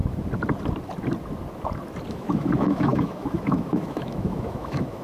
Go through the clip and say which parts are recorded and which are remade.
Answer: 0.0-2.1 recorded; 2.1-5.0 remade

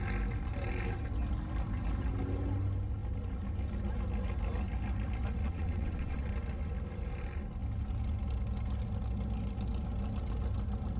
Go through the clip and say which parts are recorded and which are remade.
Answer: 0.0-5.4 recorded; 5.4-6.3 remade; 6.3-11.0 recorded

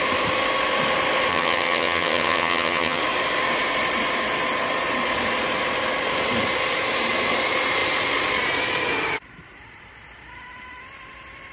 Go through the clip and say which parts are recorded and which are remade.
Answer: 0.0-1.3 recorded; 1.3-3.0 remade; 3.0-11.5 recorded

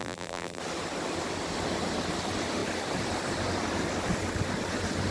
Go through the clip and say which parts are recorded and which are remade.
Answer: 0.0-0.6 remade; 0.6-5.1 recorded